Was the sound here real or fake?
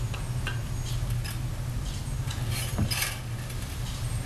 real